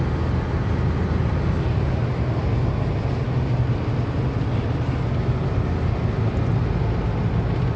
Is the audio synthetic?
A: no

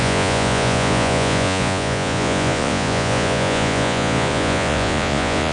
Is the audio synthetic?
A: yes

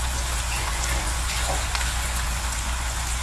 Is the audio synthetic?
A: yes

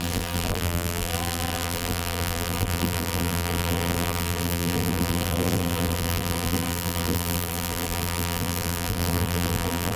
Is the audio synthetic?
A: yes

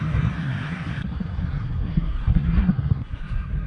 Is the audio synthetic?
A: yes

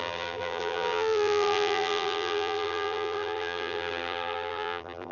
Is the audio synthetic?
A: yes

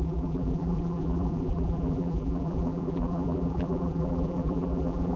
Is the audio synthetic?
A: yes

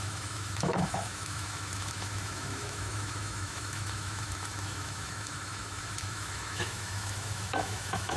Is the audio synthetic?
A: yes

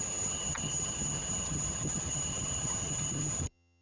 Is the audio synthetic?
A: yes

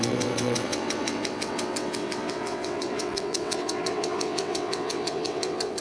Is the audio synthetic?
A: yes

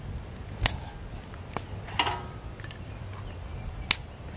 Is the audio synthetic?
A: no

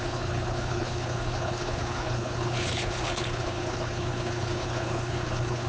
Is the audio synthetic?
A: yes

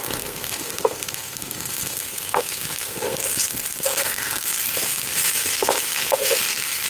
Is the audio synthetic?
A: yes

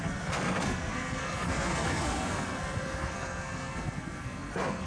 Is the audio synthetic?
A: yes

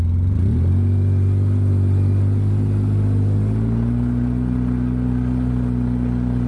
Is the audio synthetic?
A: no